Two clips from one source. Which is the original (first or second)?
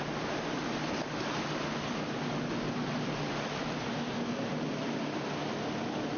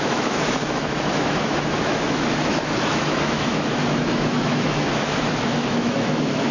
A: first